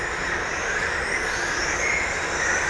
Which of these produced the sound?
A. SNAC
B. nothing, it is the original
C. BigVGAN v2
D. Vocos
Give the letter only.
B